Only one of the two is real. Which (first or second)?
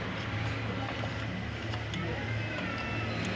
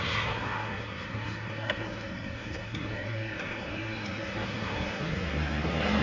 first